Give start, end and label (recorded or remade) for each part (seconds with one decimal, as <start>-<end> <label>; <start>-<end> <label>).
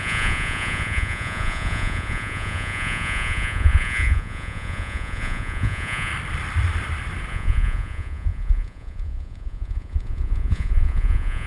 0.0-6.1 remade; 6.1-7.3 recorded; 7.3-11.5 remade